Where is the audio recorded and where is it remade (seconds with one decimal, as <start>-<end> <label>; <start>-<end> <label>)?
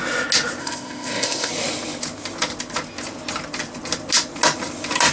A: 0.0-0.6 recorded; 0.6-1.5 remade; 1.5-5.1 recorded